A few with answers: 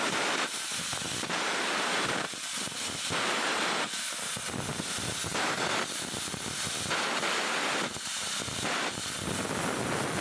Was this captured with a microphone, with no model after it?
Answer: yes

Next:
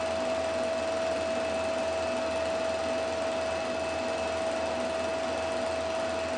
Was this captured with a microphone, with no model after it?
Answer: yes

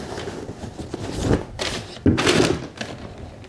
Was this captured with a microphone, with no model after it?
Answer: yes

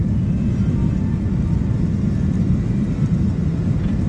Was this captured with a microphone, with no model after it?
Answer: yes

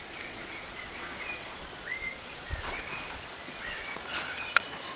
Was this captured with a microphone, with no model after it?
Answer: no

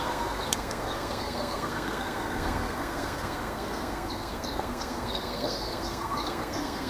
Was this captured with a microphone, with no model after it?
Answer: no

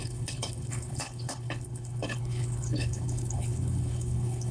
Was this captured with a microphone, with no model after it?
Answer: no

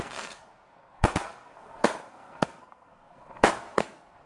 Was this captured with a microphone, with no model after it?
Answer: no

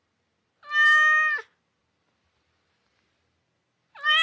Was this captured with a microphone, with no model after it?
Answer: yes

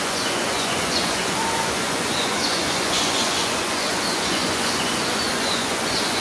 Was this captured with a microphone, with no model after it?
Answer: no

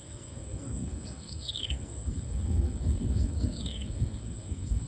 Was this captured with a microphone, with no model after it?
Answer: no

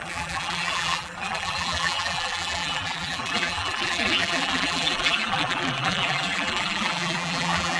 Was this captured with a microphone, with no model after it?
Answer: no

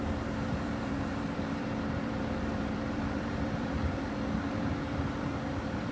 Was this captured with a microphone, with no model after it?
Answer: no